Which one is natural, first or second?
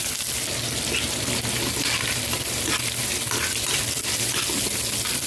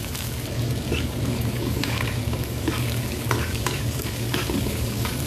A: first